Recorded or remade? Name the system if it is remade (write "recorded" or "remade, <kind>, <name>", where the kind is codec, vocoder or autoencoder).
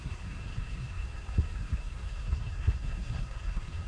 remade, codec, SNAC